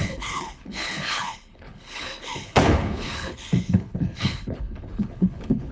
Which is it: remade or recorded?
remade